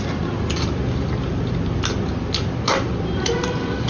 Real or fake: real